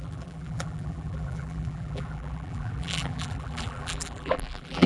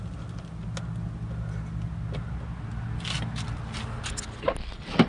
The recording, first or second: second